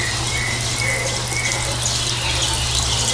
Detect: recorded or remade recorded